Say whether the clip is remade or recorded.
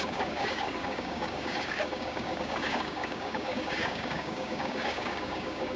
remade